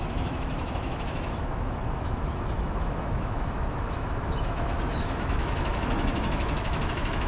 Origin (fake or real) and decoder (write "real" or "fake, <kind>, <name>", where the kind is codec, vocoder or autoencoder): fake, autoencoder, DAC-VAE